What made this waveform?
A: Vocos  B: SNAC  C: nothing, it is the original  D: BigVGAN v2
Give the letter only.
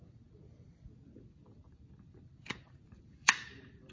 D